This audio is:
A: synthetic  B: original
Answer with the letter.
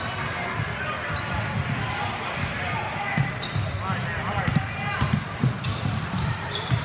A